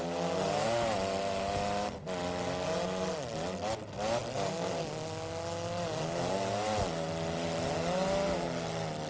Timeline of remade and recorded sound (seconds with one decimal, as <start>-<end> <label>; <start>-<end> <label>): 0.0-9.1 recorded